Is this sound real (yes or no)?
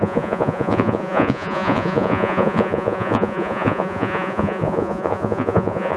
no